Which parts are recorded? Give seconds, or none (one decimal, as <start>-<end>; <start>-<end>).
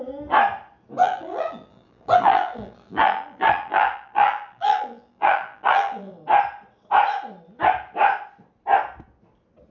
0.0-1.0; 6.2-9.7